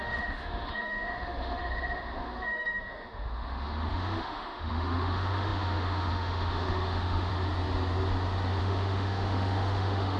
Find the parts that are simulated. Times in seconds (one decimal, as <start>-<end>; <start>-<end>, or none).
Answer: 0.0-7.3; 8.6-10.2